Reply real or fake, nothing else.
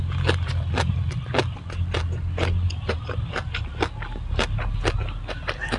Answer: real